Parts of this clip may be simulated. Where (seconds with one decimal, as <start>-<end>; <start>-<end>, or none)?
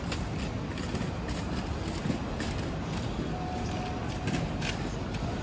none